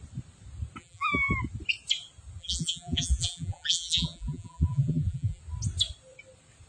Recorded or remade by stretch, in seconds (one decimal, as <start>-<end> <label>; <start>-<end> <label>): 0.0-0.8 recorded; 0.8-1.3 remade; 1.3-2.4 recorded; 2.4-5.4 remade; 5.4-6.7 recorded